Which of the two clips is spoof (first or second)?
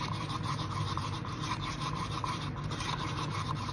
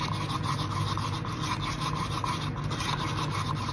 first